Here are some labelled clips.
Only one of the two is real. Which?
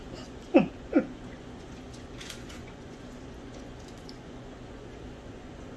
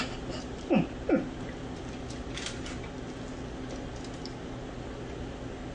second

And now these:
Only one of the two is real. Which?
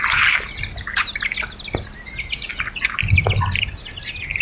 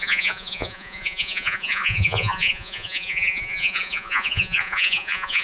first